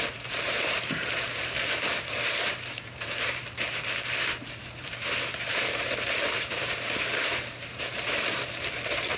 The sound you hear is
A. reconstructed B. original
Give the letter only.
A